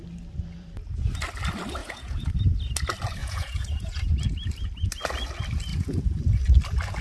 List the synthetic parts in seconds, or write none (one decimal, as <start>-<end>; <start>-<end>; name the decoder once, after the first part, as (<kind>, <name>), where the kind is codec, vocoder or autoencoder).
1.8-2.3 (vocoder, Vocos); 3.2-4.1; 5.7-6.2